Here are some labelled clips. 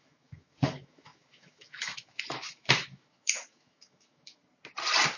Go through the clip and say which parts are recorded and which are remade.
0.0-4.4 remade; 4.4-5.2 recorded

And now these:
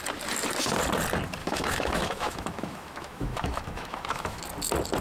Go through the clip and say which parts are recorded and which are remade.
0.0-1.4 recorded; 1.4-4.4 remade; 4.4-5.0 recorded

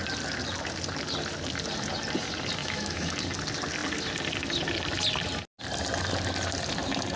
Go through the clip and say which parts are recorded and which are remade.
0.0-2.6 recorded; 2.6-3.1 remade; 3.1-7.2 recorded

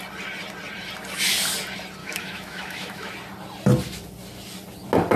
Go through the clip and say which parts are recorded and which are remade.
0.0-2.0 recorded; 2.0-3.1 remade; 3.1-5.2 recorded

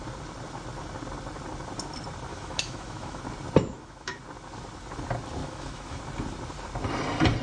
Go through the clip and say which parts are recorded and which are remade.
0.0-2.3 recorded; 2.3-3.2 remade; 3.2-3.6 recorded; 3.6-4.2 remade; 4.2-5.4 recorded; 5.4-6.0 remade; 6.0-7.4 recorded